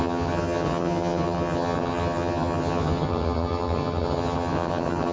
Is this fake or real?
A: fake